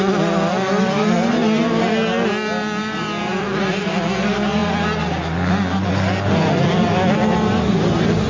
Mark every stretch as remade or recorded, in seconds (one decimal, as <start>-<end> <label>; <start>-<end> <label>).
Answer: 0.0-3.3 recorded; 3.3-4.0 remade; 4.0-8.3 recorded

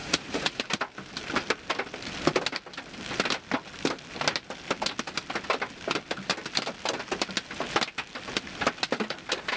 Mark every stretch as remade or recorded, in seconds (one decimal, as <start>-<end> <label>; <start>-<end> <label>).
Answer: 0.0-0.6 remade; 0.6-9.6 recorded